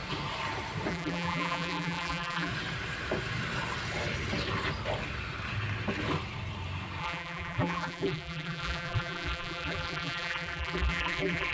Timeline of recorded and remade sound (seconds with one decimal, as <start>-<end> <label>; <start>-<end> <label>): 0.0-0.9 recorded; 0.9-2.5 remade; 2.5-7.0 recorded; 7.0-11.5 remade